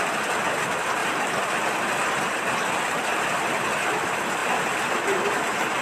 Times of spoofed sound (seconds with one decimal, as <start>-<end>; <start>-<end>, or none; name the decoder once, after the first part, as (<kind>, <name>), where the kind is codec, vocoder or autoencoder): none